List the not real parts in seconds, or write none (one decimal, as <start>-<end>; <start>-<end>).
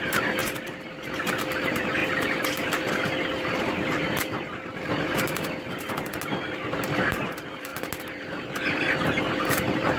0.0-0.4; 1.5-2.0; 7.0-7.7; 9.3-10.0